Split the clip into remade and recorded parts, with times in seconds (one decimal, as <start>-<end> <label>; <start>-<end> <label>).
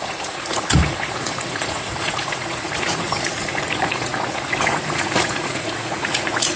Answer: 0.0-6.6 remade